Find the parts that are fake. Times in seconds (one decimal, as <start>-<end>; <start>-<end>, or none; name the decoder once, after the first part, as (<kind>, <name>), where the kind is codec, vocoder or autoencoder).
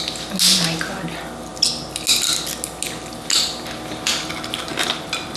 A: none